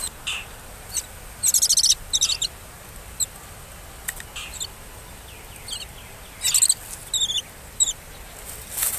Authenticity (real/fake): real